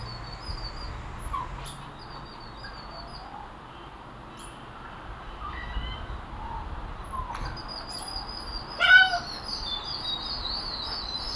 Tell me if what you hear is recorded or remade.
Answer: recorded